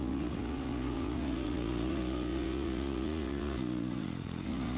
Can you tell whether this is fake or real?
fake